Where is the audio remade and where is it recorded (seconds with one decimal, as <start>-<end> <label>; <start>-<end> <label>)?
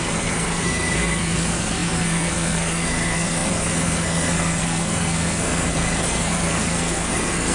0.0-7.5 remade